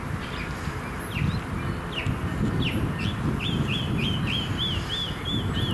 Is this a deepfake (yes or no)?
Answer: no